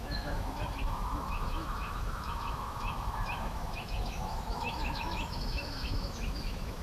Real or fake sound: fake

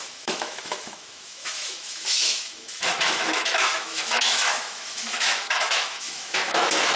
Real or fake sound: fake